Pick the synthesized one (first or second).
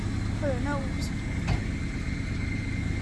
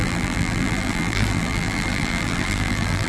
second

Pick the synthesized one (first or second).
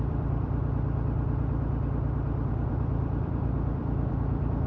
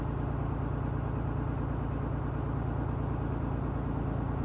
first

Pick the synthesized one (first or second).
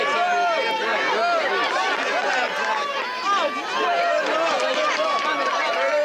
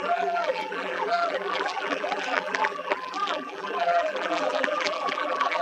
second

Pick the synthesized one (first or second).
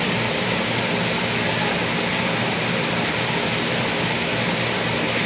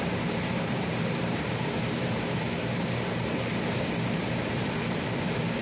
second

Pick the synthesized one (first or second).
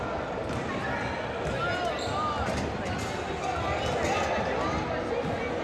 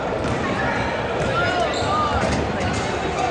second